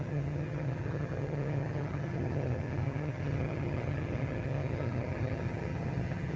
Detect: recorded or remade remade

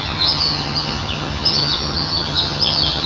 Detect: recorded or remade remade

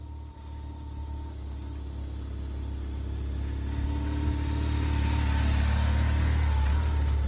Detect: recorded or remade recorded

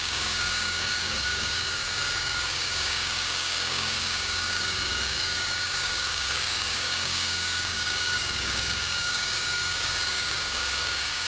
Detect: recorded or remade remade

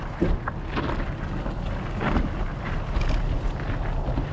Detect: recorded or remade recorded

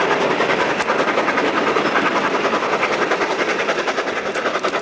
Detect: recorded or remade recorded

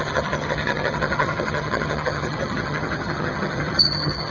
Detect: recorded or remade remade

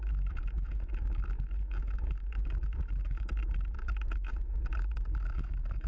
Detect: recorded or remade remade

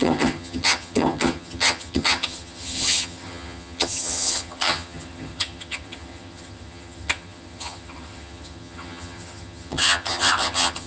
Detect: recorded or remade remade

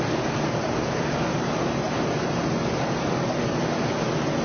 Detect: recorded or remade recorded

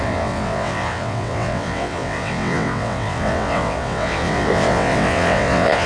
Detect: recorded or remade remade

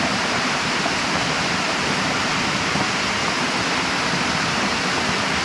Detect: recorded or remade recorded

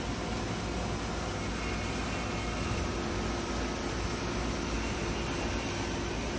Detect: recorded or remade recorded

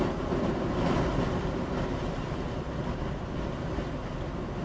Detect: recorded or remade recorded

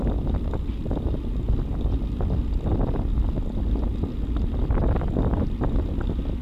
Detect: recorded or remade recorded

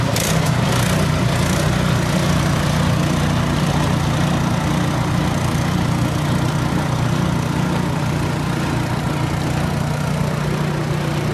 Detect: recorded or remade recorded